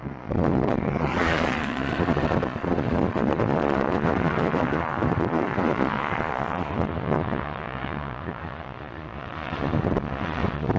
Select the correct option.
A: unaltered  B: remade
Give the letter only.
B